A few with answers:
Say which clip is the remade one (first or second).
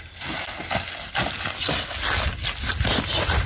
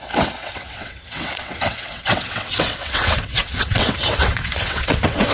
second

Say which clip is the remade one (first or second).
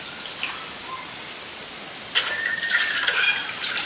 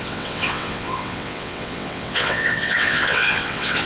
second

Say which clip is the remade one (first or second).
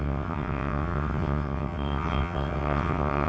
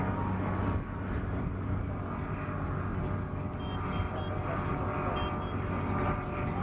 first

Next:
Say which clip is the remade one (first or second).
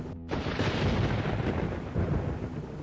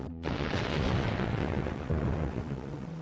second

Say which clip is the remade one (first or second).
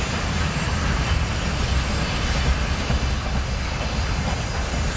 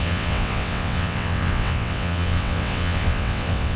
second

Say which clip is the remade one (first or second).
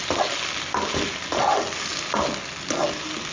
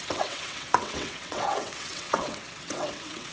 second